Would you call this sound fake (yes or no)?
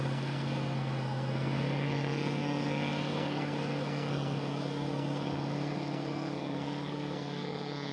yes